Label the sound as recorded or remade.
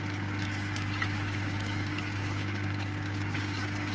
remade